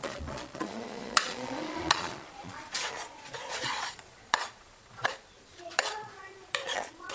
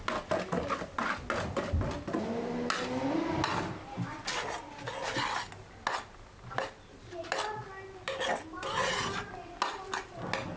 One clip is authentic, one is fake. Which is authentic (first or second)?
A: second